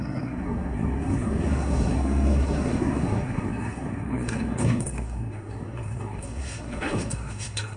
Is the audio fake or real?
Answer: fake